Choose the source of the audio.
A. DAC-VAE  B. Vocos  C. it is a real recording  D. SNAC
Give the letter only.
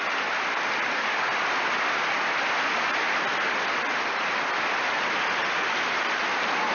C